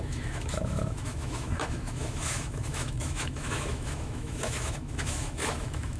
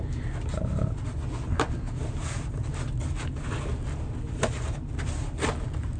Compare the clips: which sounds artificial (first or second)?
first